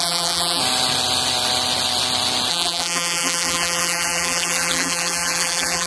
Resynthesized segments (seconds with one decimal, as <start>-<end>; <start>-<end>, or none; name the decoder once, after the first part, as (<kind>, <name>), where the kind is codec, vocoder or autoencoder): 0.0-0.6 (vocoder, BigVGAN v2); 2.5-5.9